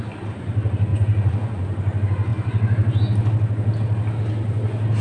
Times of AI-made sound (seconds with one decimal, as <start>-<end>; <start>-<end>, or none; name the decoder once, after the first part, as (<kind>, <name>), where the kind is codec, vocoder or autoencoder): 0.9-1.6 (vocoder, Vocos)